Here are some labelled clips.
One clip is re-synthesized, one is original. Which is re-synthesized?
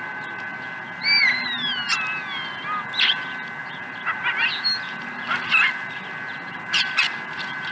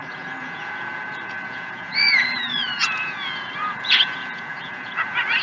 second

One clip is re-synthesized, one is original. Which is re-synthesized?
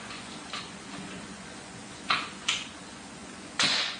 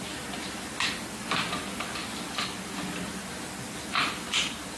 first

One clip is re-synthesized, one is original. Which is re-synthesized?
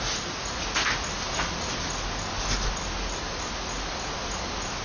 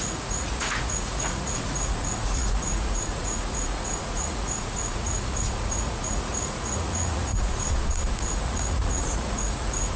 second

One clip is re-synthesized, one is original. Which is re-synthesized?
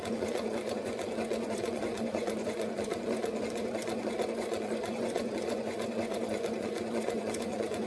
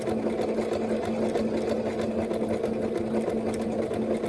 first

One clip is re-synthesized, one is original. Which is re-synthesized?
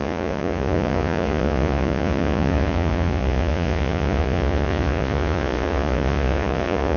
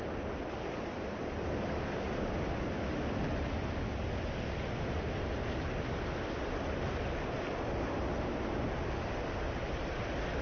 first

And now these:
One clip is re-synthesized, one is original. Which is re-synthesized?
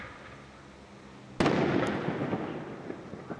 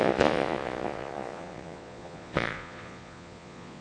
second